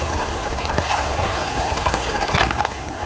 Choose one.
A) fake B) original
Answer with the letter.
A